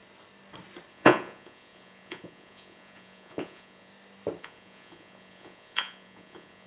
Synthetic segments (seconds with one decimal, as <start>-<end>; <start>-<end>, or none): 0.9-3.9; 4.4-6.7